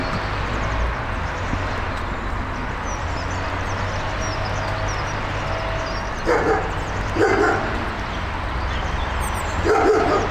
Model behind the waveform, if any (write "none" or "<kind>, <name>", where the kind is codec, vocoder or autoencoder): none